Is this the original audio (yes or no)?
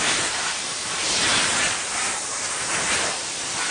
no